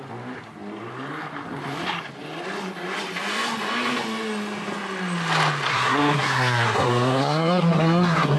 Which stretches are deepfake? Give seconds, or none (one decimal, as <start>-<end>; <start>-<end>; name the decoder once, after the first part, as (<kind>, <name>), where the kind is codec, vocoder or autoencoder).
5.7-8.4 (codec, SNAC)